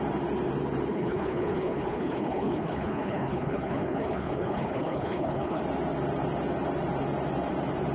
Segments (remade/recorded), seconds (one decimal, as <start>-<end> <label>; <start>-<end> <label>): 0.0-0.9 recorded; 0.9-5.6 remade; 5.6-7.9 recorded